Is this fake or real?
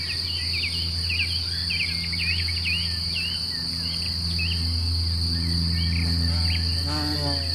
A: real